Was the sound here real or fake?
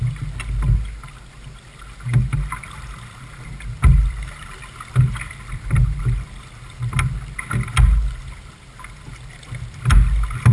real